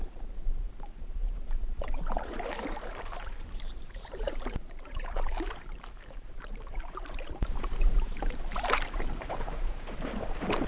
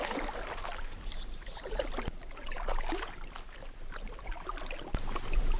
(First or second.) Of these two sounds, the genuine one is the second